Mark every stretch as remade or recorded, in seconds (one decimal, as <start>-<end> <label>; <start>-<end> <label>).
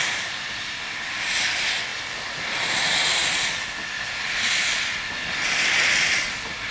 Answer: 0.0-6.7 recorded